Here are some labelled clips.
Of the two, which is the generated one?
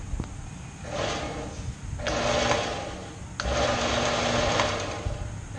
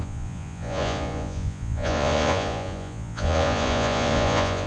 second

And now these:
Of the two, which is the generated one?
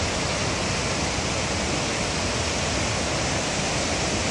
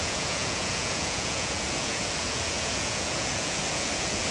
second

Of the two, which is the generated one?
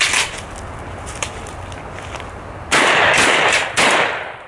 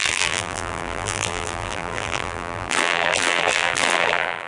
second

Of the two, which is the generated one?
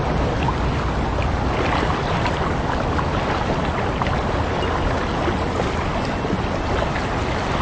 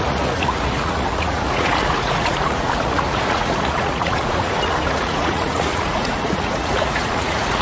second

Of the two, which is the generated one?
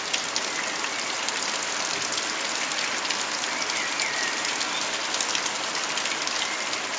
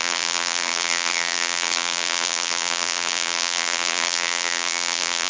second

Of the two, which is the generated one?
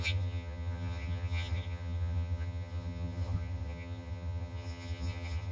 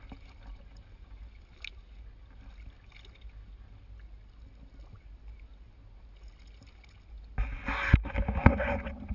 first